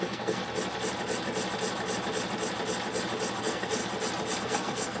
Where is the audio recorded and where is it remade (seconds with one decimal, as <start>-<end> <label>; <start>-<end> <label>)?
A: 0.0-0.4 remade; 0.4-3.4 recorded; 3.4-3.8 remade; 3.8-4.4 recorded; 4.4-5.0 remade